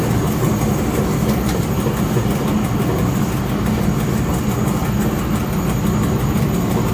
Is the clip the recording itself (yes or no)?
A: yes